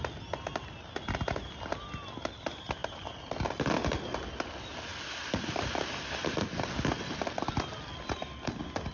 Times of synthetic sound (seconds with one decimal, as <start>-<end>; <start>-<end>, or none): none